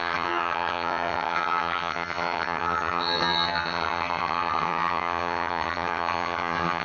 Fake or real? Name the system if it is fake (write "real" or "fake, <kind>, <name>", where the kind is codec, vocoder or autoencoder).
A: fake, vocoder, HiFi-GAN